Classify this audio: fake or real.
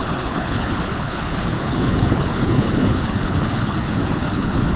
fake